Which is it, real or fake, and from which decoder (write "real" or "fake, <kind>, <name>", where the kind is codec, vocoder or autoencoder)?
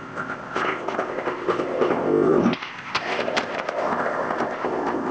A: fake, codec, ZipCodec